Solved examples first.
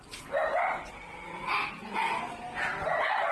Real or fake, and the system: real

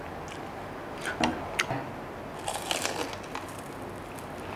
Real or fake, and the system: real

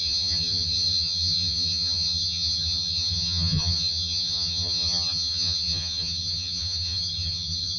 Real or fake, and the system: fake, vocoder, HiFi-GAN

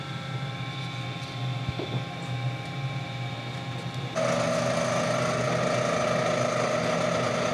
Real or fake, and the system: real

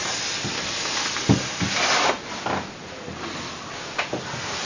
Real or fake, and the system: real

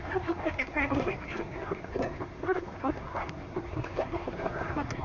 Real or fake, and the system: fake, codec, SNAC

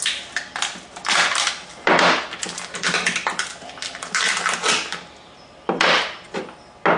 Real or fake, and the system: real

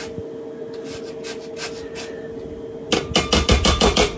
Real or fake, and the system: real